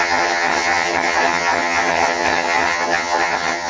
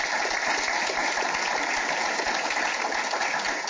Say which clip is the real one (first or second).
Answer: second